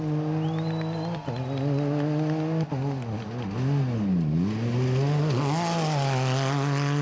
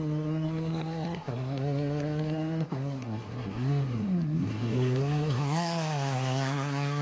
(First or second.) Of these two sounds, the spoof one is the second